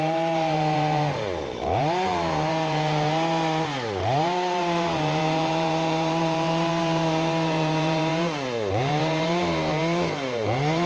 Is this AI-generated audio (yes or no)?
yes